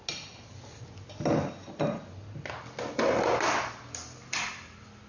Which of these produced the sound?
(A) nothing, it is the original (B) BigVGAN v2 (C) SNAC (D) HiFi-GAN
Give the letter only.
A